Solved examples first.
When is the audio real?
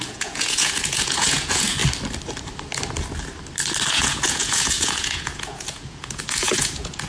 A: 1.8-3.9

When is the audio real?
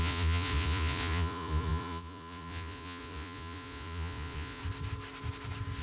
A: 4.6-5.8